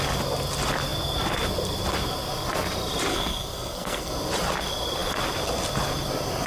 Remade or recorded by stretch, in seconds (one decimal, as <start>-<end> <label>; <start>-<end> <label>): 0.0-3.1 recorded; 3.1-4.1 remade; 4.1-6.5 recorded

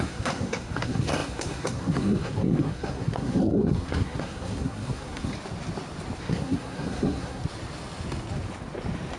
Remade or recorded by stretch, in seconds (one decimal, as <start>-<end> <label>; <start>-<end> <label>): 0.0-5.3 remade; 5.3-6.2 recorded; 6.2-7.4 remade; 7.4-9.2 recorded

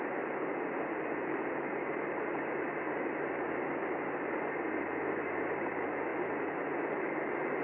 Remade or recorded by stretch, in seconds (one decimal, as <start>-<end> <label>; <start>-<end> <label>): 0.0-7.6 recorded